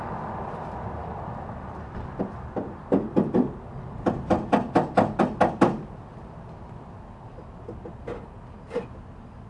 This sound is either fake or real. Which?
fake